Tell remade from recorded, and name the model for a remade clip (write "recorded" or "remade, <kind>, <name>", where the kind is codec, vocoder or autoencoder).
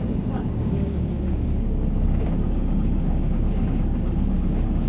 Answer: remade, codec, DAC